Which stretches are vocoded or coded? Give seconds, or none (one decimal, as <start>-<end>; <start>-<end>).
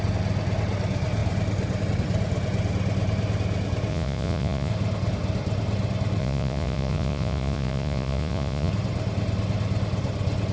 3.9-4.7; 6.2-8.7